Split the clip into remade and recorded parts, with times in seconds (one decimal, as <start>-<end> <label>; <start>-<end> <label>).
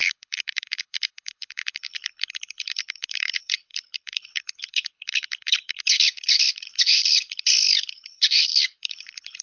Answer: 0.0-9.4 remade